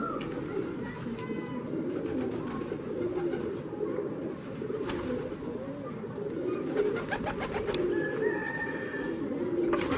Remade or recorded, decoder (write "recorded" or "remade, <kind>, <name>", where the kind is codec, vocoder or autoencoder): recorded